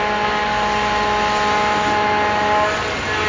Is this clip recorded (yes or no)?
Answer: yes